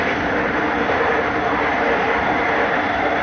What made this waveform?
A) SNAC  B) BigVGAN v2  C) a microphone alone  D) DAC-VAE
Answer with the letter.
C